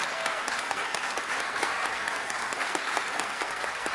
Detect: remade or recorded remade